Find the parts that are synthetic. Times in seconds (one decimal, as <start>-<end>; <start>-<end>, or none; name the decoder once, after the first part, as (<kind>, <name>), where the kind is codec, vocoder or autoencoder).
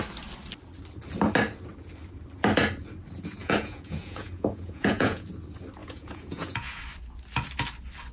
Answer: 3.4-5.3 (vocoder, Vocos); 5.8-6.8